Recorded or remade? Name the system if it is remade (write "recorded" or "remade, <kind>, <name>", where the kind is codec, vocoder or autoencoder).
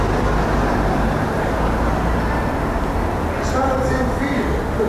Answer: recorded